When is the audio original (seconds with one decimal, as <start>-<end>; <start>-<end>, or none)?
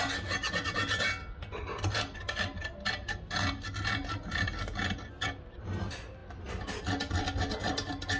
0.0-8.2